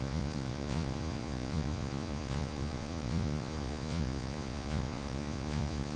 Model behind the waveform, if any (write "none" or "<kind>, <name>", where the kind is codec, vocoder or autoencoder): vocoder, Vocos